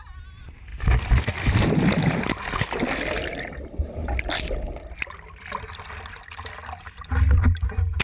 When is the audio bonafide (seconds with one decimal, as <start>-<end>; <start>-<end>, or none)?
0.0-8.0